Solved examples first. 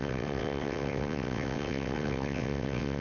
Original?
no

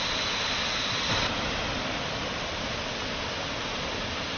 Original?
yes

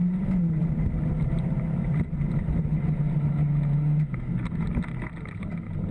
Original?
yes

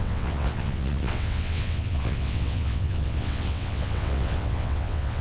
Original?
no